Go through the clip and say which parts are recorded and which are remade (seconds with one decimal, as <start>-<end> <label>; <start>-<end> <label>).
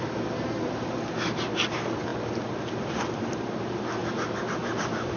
0.0-5.2 recorded